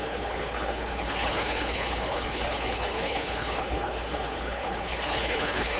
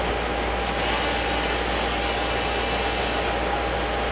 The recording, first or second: second